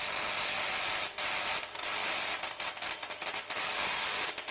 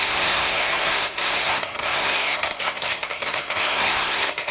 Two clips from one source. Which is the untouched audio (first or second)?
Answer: first